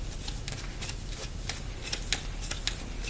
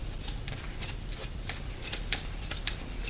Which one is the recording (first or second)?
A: first